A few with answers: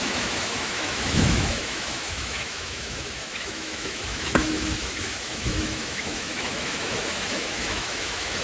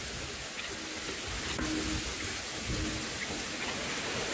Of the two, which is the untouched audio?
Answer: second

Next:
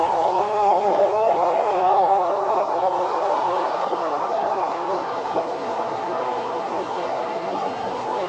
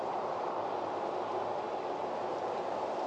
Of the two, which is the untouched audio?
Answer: second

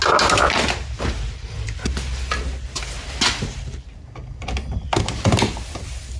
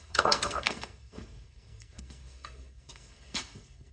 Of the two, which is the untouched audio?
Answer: first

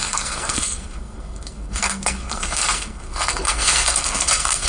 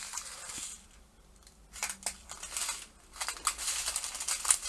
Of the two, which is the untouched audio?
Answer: second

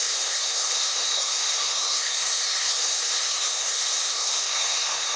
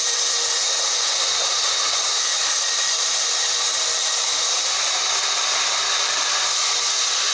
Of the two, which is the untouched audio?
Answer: second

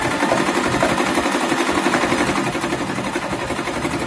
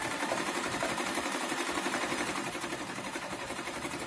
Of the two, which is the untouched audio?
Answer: first